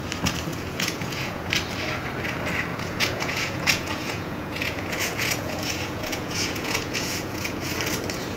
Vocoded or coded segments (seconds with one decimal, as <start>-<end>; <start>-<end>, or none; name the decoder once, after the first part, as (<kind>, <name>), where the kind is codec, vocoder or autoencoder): 0.5-1.5 (vocoder, Vocos); 2.7-7.7